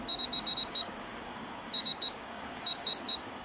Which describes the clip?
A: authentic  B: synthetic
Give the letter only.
B